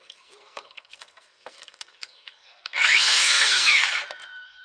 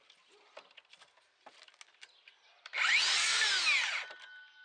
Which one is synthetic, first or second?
first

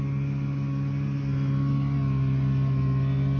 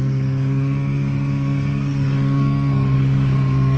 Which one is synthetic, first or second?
second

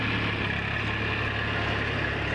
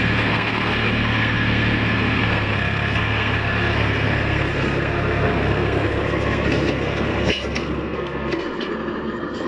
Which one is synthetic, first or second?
second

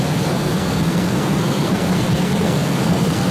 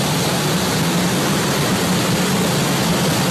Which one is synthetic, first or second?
first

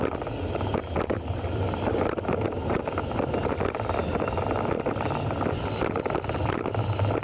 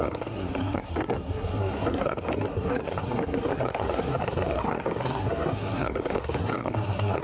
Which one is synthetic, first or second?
second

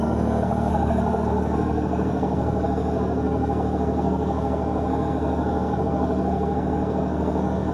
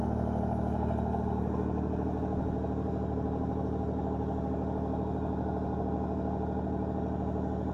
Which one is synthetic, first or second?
first